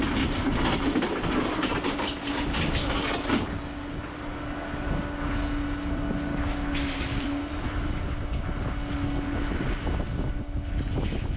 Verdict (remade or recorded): recorded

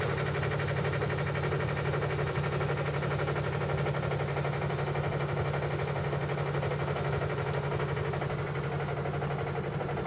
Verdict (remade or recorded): recorded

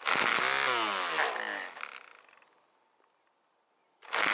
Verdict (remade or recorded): recorded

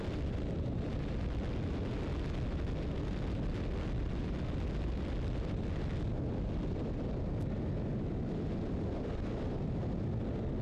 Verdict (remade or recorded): recorded